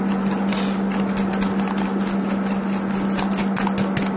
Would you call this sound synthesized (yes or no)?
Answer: no